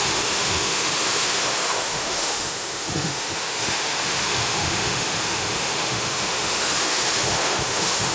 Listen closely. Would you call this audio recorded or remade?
remade